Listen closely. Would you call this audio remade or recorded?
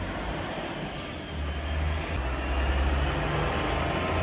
recorded